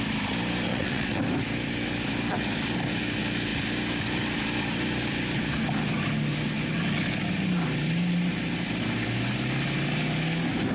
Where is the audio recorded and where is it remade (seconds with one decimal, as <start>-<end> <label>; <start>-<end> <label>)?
0.0-0.7 recorded; 0.7-1.2 remade; 1.2-10.7 recorded